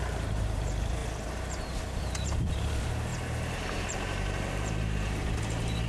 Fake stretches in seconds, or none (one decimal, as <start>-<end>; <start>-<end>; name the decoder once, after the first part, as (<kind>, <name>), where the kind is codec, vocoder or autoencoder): 0.0-3.1 (vocoder, BigVGAN v2); 3.7-5.9